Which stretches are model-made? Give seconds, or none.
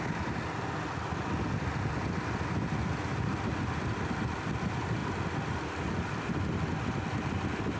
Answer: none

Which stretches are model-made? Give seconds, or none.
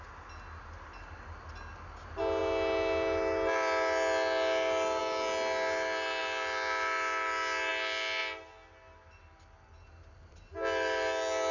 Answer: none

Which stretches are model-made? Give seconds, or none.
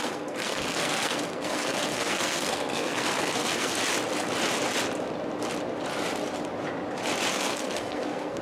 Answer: 0.0-3.8; 7.3-8.4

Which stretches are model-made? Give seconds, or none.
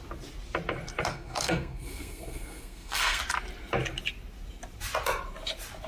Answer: 1.1-3.2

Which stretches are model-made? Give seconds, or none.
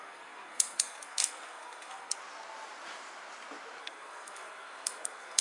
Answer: 0.0-2.2; 3.8-5.4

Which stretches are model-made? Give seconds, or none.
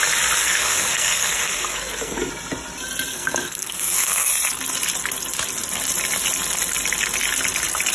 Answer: 0.4-2.3; 3.1-4.3